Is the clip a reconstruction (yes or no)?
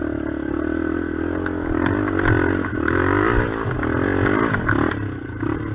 no